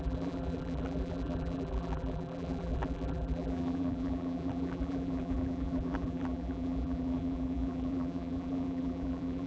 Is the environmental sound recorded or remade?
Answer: remade